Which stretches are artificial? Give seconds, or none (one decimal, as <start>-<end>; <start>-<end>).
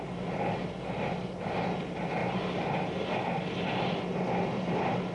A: none